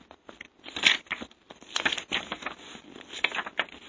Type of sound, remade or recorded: recorded